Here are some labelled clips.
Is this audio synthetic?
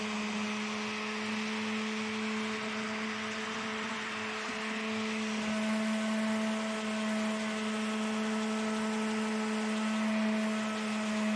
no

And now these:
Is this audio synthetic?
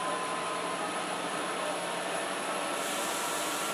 yes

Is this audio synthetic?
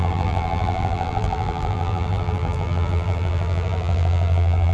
yes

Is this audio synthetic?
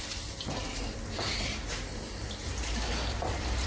yes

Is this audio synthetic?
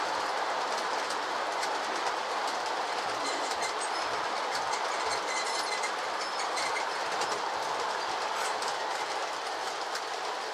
yes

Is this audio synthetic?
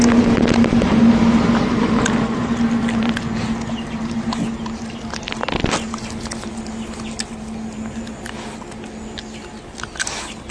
no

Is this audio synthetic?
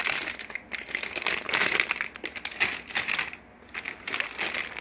no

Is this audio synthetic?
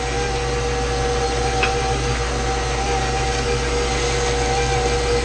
no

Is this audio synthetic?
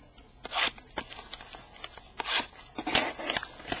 no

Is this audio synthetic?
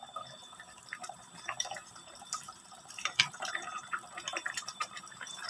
yes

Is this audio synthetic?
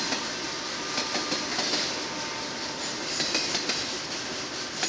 no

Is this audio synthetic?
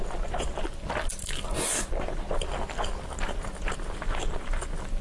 no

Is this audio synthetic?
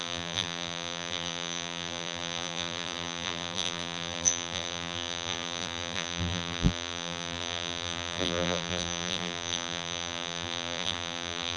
yes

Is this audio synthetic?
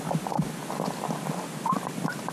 no